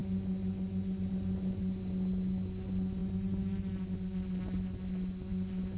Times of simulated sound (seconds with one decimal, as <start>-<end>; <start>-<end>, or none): none